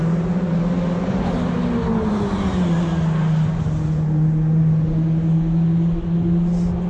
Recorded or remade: recorded